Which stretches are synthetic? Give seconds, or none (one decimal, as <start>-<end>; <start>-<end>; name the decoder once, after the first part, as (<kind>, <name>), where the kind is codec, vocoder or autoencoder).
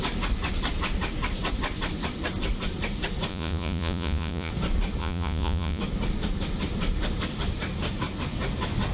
3.3-4.5 (vocoder, Vocos); 5.0-5.8